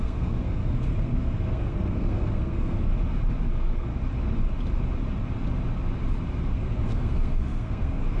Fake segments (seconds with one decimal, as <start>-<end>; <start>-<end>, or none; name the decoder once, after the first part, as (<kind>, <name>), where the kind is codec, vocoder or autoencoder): 0.0-2.9 (codec, SNAC); 3.5-3.9; 6.5-8.2